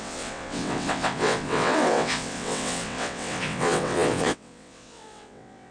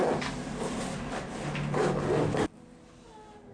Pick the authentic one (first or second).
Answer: second